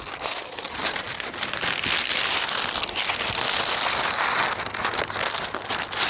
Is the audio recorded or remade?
recorded